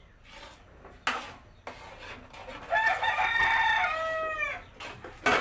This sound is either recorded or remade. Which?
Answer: recorded